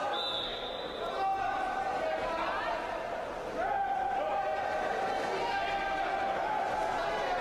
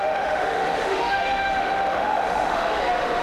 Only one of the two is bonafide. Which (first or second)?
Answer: first